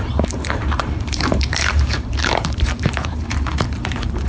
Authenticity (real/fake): fake